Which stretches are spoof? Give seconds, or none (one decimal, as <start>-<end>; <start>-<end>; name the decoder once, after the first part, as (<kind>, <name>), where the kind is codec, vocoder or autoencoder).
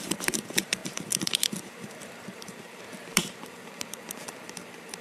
0.0-5.0 (vocoder, BigVGAN v2)